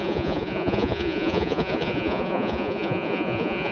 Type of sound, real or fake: fake